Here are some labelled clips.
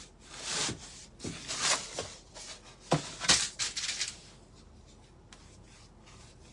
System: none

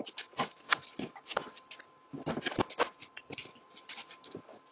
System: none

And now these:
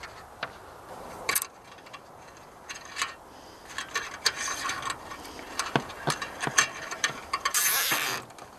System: vocoder, BigVGAN v2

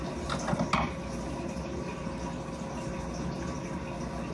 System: none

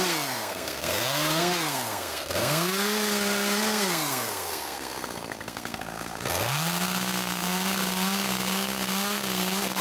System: codec, SNAC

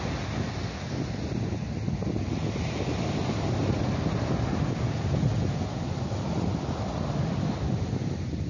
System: none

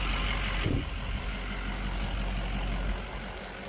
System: none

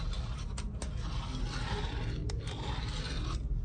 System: none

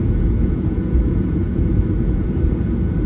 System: vocoder, Vocos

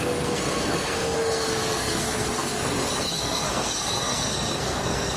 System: codec, SNAC